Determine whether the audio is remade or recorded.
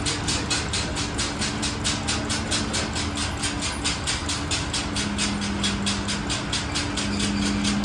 recorded